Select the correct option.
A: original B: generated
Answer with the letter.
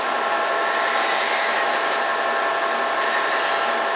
A